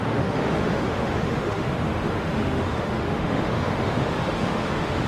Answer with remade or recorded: remade